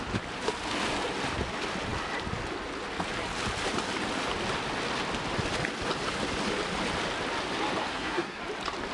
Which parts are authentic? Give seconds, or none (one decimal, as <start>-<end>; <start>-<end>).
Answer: 0.0-7.9; 8.4-8.9

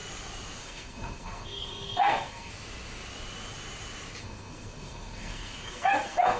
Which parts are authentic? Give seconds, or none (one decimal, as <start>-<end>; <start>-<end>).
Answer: 0.0-0.6; 2.5-4.2

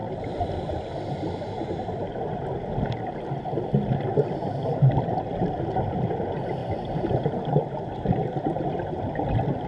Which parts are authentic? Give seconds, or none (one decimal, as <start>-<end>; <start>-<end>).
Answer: 0.0-5.0; 6.6-7.5